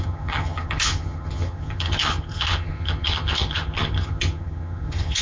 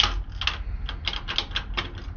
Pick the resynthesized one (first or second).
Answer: first